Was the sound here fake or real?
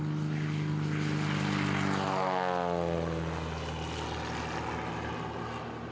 real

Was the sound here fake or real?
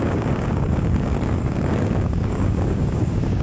fake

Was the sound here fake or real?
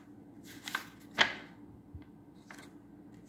real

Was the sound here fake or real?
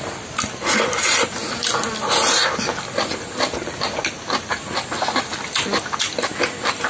real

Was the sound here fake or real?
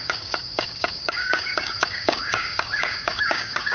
fake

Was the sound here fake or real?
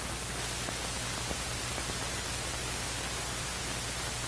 real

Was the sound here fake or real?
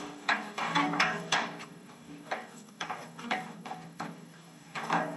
fake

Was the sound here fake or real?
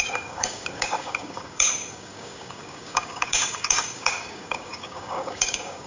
fake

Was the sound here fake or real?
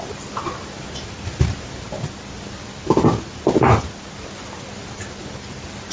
real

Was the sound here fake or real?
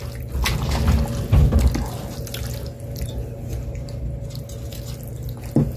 real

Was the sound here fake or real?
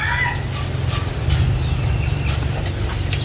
real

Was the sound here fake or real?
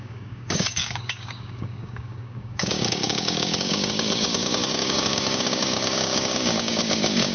fake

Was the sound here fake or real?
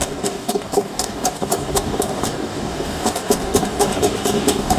fake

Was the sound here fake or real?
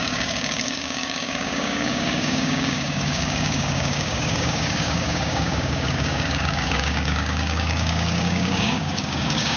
fake